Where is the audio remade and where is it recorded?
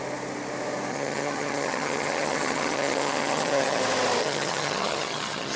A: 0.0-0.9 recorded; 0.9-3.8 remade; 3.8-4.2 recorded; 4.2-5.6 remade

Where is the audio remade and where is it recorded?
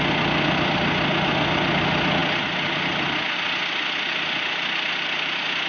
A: 0.0-5.7 recorded